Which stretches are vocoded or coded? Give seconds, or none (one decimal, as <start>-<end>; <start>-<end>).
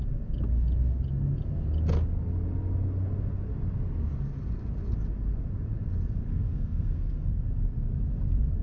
6.3-7.3